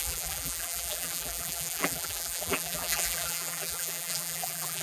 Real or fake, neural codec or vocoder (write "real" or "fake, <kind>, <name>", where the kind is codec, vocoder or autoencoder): fake, vocoder, BigVGAN v2